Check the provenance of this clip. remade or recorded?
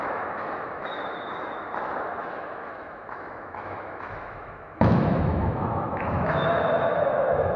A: remade